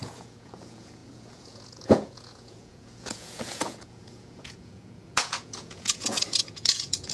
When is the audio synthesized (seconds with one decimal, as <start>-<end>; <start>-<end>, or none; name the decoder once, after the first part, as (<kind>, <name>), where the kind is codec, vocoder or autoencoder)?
0.0-7.1 (vocoder, Vocos)